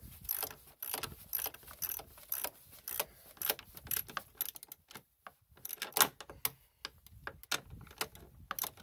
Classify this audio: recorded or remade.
recorded